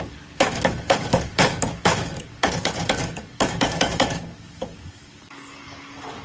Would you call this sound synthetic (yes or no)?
yes